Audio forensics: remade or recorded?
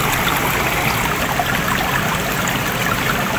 recorded